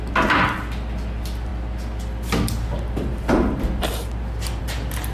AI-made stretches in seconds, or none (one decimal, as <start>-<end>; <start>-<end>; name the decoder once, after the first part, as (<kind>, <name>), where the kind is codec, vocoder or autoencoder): none